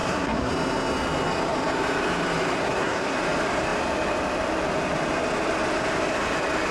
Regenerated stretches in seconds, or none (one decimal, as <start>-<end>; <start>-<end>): 0.0-0.5; 2.6-3.2